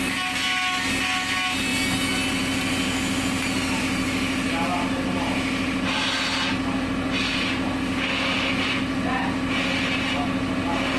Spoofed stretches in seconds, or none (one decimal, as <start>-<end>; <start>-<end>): none